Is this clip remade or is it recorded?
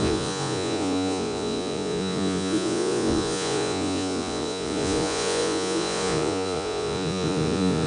remade